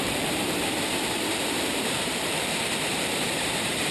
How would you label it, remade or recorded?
remade